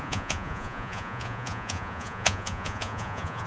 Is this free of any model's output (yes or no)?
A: no